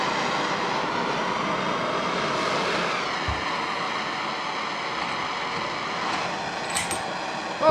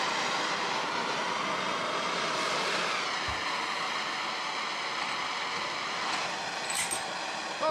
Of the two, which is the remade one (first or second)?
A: second